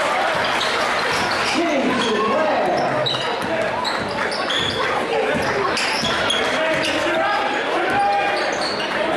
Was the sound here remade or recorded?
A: recorded